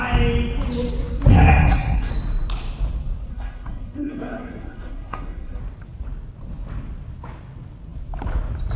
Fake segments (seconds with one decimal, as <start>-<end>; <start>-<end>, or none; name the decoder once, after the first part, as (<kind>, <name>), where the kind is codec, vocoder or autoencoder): 1.3-2.1 (codec, SNAC); 3.3-5.6